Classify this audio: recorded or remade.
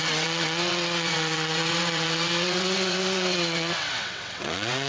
remade